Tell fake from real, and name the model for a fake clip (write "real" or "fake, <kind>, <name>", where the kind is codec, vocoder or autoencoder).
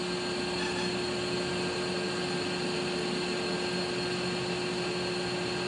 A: real